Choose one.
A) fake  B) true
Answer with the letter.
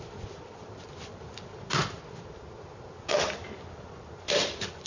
B